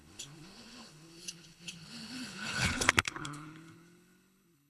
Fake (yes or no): yes